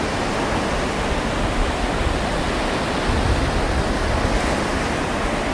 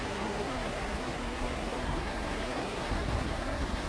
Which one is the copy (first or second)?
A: second